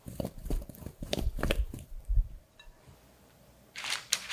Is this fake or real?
fake